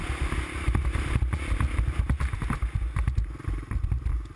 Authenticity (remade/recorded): recorded